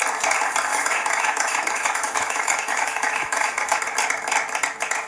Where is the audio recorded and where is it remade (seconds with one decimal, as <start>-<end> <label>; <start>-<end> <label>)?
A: 0.0-0.7 recorded; 0.7-3.8 remade; 3.8-5.1 recorded